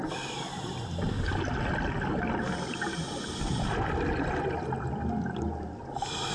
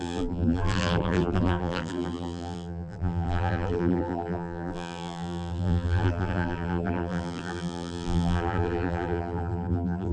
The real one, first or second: first